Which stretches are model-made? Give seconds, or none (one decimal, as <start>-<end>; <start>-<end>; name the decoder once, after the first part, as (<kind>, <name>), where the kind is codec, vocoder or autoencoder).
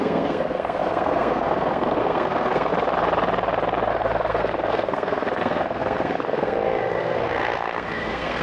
0.0-2.7 (codec, SNAC); 3.9-8.4